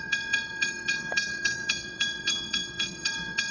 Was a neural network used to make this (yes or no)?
yes